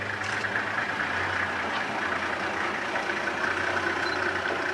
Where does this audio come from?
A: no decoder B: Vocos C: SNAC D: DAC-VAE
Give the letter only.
A